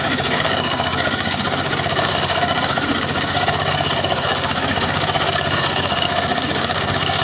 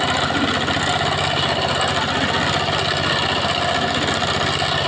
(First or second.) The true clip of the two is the second